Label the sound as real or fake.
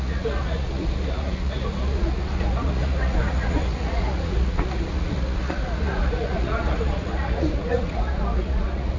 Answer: fake